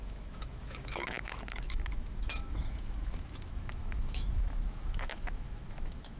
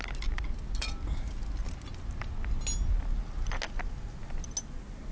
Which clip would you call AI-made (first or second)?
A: first